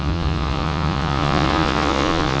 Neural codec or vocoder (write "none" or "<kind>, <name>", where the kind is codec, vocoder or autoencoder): vocoder, Vocos